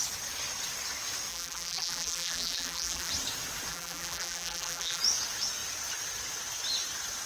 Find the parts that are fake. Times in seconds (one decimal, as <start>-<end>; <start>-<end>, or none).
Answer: 1.3-3.1; 3.7-5.0